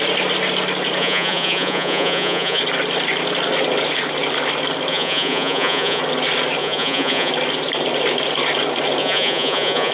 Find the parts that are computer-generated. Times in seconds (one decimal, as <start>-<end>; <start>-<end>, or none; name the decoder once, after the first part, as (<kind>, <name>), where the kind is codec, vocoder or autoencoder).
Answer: 1.0-2.6 (vocoder, Vocos); 4.9-6.0; 6.6-7.3; 9.0-9.9